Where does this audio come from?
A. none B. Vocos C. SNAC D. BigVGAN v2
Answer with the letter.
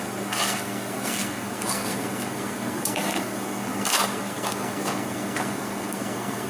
C